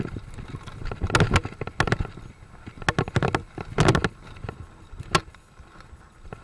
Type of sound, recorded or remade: recorded